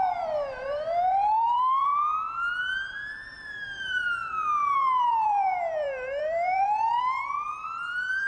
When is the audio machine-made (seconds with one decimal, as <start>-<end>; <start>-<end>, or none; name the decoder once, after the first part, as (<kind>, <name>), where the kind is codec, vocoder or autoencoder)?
0.0-1.9 (vocoder, BigVGAN v2); 3.3-8.3